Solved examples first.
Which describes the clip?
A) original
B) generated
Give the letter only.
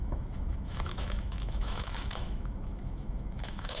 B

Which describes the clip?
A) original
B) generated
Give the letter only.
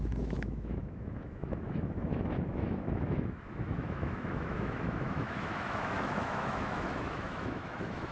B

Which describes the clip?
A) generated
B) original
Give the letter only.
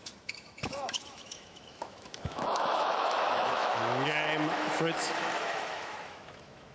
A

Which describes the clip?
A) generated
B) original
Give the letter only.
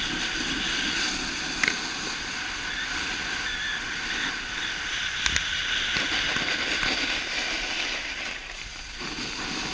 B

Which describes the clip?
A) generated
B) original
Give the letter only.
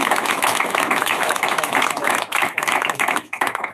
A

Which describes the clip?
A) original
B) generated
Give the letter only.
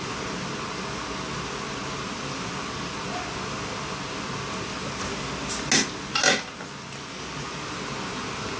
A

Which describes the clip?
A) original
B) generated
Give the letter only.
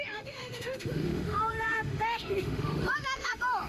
B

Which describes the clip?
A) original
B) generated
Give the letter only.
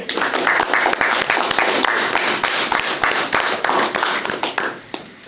A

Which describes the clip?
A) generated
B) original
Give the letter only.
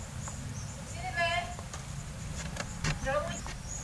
B